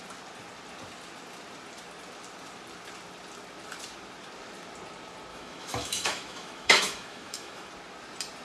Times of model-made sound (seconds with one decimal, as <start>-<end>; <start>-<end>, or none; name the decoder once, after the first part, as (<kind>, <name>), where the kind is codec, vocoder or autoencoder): 5.3-7.7 (autoencoder, DAC-VAE)